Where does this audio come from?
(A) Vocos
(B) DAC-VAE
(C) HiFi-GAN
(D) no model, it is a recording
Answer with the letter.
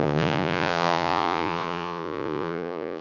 A